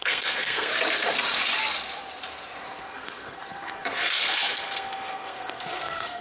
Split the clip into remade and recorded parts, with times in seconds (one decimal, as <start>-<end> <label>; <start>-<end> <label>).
0.0-0.7 remade; 0.7-2.8 recorded; 2.8-6.2 remade